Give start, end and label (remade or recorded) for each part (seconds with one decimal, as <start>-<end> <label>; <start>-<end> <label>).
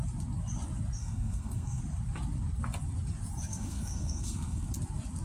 0.0-1.0 recorded; 1.0-1.8 remade; 1.8-3.5 recorded; 3.5-4.7 remade; 4.7-5.2 recorded